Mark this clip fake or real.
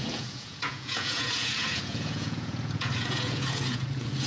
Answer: fake